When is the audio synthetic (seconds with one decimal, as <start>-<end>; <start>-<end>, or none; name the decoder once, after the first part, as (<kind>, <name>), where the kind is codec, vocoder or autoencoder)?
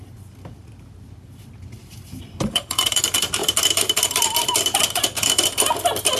1.8-3.0 (vocoder, BigVGAN v2); 3.4-4.6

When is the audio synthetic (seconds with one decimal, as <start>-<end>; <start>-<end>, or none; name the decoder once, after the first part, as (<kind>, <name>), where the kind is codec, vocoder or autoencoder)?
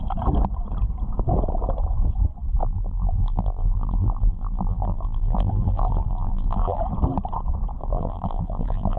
2.6-6.8 (vocoder, BigVGAN v2); 7.8-9.0